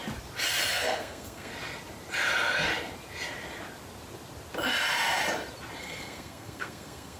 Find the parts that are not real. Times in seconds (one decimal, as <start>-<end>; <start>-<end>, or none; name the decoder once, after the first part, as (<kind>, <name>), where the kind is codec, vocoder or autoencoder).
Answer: 0.7-1.5 (codec, SNAC); 5.8-7.2